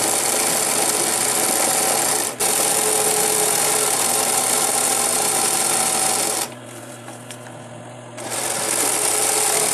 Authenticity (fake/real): real